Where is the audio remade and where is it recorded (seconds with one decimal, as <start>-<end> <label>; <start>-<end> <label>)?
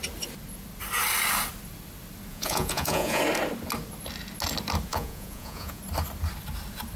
0.0-2.3 recorded; 2.3-3.2 remade; 3.2-4.9 recorded; 4.9-5.8 remade; 5.8-7.0 recorded